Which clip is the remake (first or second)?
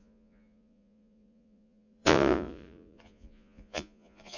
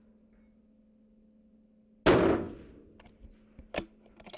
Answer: first